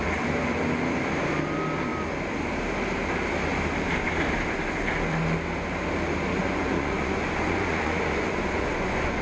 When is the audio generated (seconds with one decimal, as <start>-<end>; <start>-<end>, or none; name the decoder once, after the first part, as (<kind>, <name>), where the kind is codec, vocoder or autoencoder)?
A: 6.3-9.2 (vocoder, Vocos)